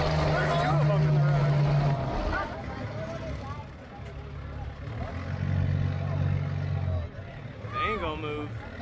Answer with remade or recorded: recorded